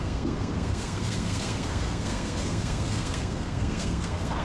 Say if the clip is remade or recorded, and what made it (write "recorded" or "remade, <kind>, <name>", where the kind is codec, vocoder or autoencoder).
remade, codec, SNAC